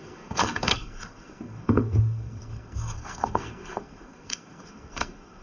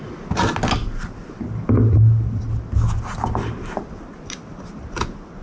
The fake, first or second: first